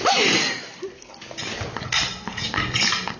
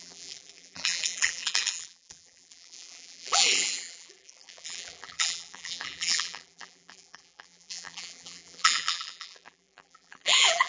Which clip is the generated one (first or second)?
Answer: second